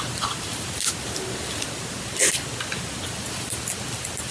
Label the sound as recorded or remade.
recorded